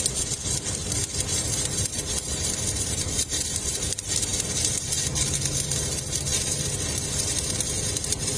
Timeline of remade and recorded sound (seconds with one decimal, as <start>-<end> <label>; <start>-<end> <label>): 0.0-0.8 recorded; 0.8-3.7 remade; 3.7-8.4 recorded